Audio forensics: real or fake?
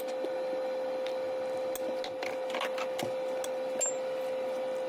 real